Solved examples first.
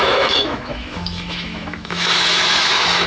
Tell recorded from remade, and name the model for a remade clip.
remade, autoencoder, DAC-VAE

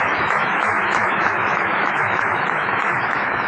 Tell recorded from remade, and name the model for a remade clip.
remade, autoencoder, DAC-VAE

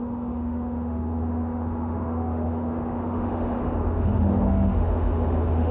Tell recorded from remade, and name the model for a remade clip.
remade, autoencoder, DAC-VAE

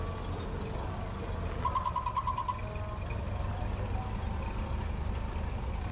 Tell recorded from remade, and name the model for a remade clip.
recorded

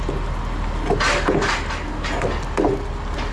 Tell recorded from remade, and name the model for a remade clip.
recorded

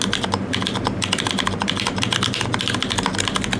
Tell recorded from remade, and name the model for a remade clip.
recorded